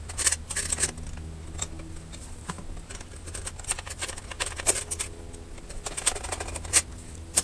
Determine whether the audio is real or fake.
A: real